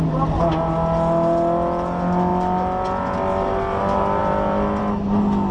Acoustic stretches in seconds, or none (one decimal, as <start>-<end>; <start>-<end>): 0.0-5.5